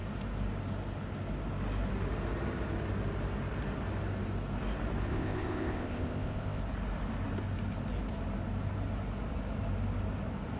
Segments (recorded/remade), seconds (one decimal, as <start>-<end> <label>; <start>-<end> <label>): 0.0-5.1 recorded; 5.1-6.6 remade; 6.6-10.6 recorded